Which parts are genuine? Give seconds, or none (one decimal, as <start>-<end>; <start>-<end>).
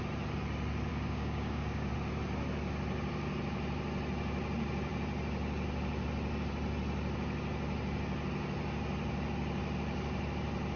0.0-0.9; 1.9-10.8